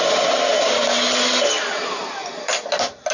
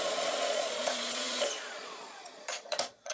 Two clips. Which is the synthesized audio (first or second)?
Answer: second